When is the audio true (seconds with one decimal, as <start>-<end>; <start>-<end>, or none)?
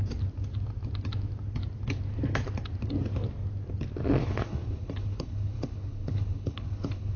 0.0-4.2